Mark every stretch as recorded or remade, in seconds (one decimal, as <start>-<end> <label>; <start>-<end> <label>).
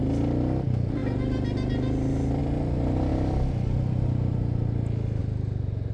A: 0.0-5.9 recorded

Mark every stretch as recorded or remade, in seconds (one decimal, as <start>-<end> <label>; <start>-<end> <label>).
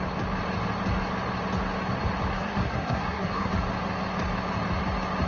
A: 0.0-2.3 recorded; 2.3-3.5 remade; 3.5-5.3 recorded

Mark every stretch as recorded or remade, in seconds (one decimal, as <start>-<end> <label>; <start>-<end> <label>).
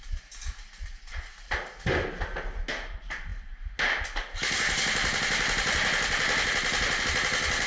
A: 0.0-7.7 recorded